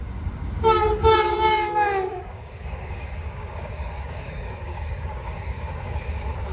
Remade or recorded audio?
remade